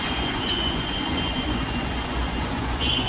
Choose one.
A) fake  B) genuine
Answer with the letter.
A